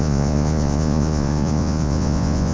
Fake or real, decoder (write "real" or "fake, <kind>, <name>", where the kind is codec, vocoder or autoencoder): fake, vocoder, Vocos